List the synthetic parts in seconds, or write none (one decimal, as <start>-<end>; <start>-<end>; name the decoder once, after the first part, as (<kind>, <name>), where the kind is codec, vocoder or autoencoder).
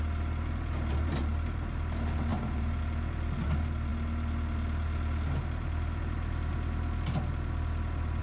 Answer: 2.3-2.8 (vocoder, BigVGAN v2)